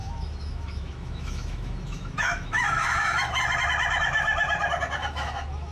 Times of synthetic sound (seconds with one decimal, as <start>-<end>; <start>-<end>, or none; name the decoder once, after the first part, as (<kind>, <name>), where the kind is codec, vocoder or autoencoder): 0.0-3.4 (autoencoder, DAC-VAE); 5.0-5.7

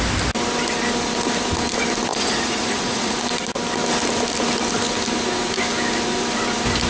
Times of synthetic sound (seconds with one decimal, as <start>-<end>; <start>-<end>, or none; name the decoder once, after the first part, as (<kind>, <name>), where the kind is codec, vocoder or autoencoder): 2.1-3.2 (vocoder, Vocos)

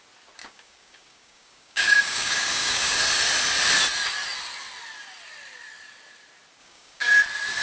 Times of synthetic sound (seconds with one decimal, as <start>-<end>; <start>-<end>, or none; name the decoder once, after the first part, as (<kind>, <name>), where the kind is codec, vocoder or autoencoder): 0.4-3.0 (codec, DAC); 6.6-7.1